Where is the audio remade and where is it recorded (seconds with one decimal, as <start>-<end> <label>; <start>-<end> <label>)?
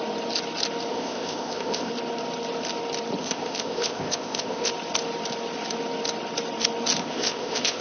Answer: 0.0-0.9 recorded; 0.9-1.9 remade; 1.9-3.2 recorded; 3.2-4.7 remade; 4.7-7.0 recorded; 7.0-7.8 remade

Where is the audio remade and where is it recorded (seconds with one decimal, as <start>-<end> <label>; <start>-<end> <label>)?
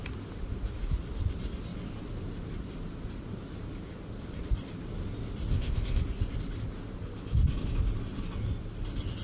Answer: 0.0-5.5 recorded; 5.5-6.0 remade; 6.0-9.2 recorded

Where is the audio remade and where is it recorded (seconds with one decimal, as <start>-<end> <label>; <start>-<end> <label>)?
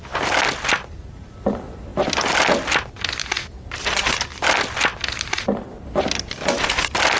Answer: 0.0-7.2 recorded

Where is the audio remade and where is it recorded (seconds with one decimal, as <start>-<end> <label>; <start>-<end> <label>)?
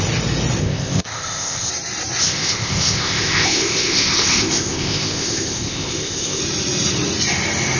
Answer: 0.0-0.6 recorded; 0.6-1.7 remade; 1.7-2.2 recorded; 2.2-6.4 remade; 6.4-7.8 recorded